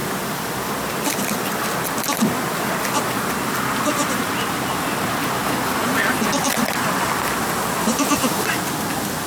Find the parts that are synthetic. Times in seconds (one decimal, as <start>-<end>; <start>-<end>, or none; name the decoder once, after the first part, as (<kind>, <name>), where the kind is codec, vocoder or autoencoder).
0.0-2.7 (vocoder, BigVGAN v2)